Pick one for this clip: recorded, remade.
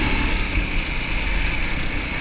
recorded